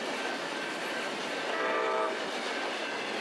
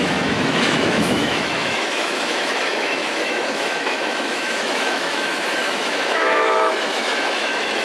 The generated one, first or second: second